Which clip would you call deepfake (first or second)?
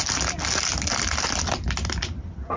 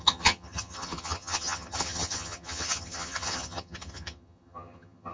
second